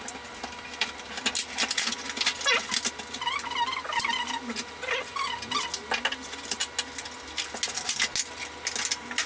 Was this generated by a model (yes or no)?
no